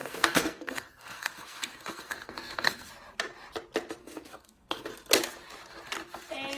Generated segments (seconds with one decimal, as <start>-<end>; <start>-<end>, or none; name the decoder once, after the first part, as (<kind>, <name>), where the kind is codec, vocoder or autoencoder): 0.0-2.9 (codec, SNAC); 4.0-4.9